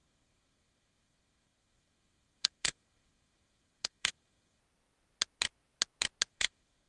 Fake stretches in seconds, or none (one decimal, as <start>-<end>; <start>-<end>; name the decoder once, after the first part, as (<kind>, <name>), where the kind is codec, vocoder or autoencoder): 0.0-4.6 (codec, SNAC); 6.3-6.9